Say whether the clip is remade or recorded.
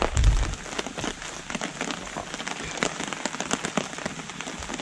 recorded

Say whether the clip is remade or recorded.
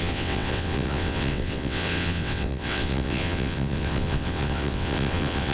remade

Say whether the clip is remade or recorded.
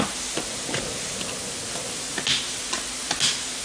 recorded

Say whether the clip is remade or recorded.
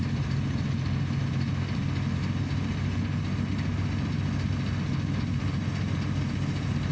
recorded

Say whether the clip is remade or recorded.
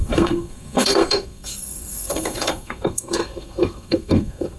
remade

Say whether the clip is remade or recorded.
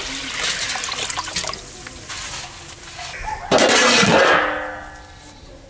recorded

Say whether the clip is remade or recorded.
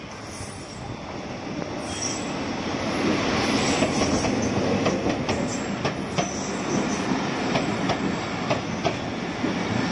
recorded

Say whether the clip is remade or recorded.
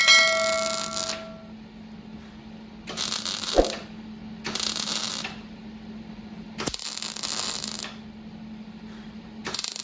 recorded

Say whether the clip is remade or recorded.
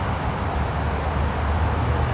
recorded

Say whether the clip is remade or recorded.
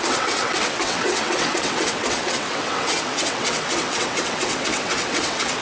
remade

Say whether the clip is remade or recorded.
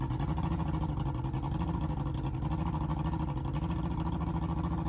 recorded